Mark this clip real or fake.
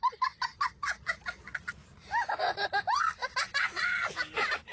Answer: real